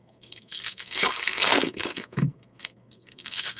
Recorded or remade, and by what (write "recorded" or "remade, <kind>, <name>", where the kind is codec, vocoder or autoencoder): remade, codec, SNAC